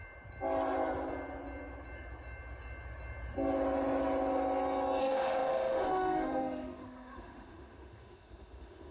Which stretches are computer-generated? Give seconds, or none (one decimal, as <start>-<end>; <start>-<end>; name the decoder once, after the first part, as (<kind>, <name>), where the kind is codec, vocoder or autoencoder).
5.0-8.9 (autoencoder, DAC-VAE)